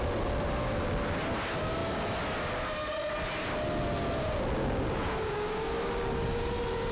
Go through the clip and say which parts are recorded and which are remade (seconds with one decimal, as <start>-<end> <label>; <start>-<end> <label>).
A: 0.0-4.6 recorded; 4.6-6.5 remade; 6.5-6.9 recorded